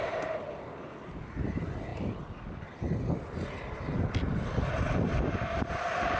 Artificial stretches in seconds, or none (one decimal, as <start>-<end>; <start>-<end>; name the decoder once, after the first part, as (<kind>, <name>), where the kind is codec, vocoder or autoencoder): none